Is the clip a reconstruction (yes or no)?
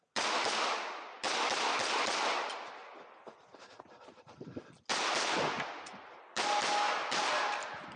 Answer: no